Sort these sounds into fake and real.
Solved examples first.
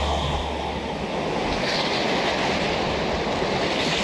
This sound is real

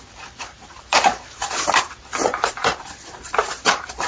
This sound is fake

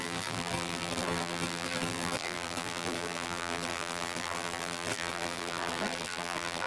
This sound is fake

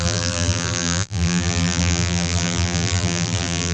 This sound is fake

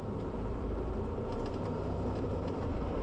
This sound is fake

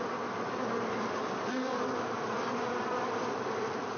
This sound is fake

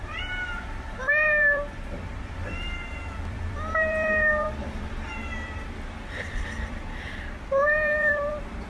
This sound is fake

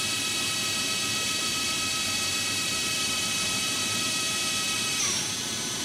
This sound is fake